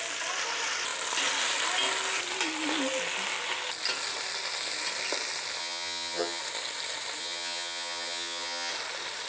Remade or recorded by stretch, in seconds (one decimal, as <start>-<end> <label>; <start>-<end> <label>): 0.0-5.6 recorded; 5.6-6.4 remade; 6.4-7.2 recorded; 7.2-8.7 remade; 8.7-9.3 recorded